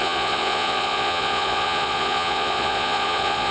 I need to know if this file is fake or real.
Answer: fake